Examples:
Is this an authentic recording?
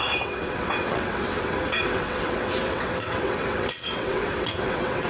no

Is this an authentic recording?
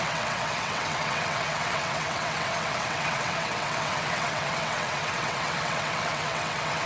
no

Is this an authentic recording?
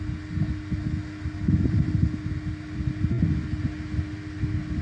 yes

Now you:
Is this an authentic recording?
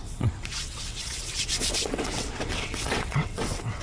no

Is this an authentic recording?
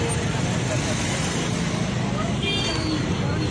yes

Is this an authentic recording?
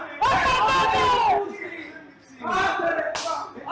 yes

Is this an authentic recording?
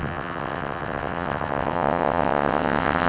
no